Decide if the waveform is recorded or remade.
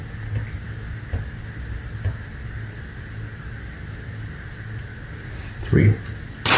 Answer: recorded